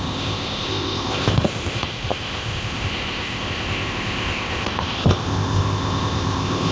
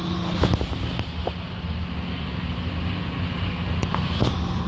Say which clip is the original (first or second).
second